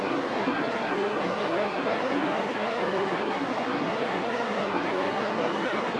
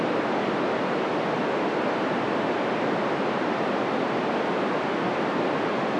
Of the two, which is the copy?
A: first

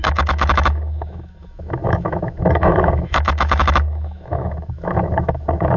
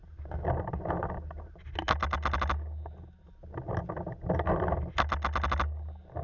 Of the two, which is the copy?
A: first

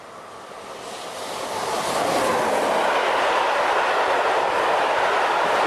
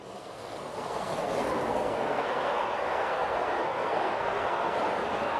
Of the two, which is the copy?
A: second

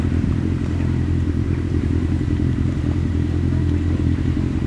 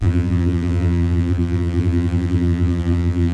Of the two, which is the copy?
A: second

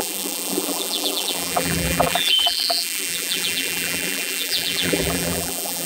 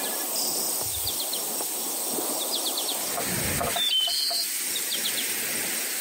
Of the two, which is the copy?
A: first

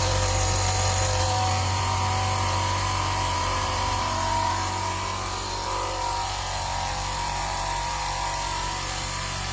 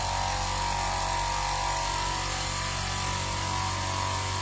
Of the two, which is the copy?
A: first